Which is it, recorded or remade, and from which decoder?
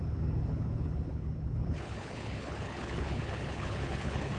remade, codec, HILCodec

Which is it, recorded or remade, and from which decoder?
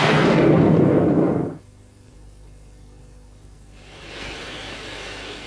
remade, codec, SNAC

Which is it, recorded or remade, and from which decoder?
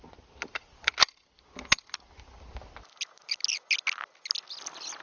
recorded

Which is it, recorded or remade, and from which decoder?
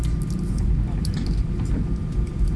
recorded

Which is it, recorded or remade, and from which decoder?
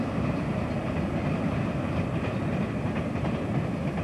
recorded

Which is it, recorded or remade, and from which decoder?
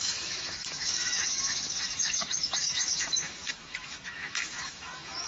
remade, autoencoder, DAC-VAE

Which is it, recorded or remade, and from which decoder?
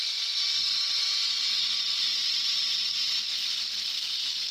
recorded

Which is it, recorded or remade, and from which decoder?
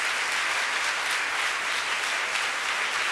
recorded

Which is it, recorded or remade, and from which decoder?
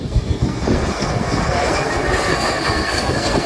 remade, codec, SNAC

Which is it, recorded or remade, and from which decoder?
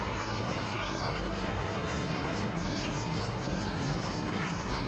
remade, codec, SNAC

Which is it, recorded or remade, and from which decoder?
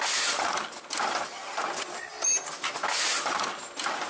recorded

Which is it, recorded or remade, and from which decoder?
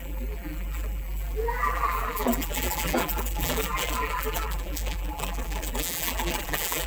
remade, vocoder, BigVGAN v2